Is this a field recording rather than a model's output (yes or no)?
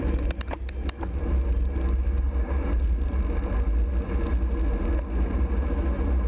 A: yes